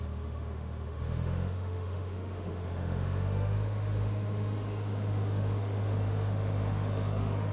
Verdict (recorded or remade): remade